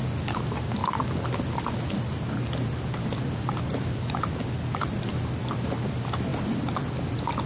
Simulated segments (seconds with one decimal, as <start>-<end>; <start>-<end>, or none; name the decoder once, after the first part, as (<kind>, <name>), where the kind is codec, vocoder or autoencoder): none